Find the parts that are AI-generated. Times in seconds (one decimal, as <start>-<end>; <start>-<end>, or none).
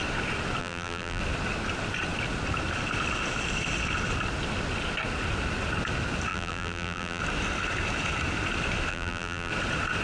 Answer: 0.6-1.2; 6.3-7.2; 8.9-9.5